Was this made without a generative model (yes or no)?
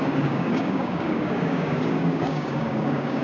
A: no